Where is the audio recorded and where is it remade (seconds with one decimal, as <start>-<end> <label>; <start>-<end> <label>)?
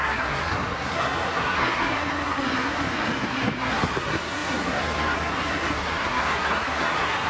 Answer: 0.0-7.3 remade